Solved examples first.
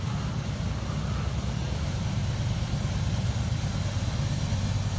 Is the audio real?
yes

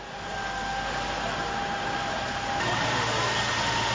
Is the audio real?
yes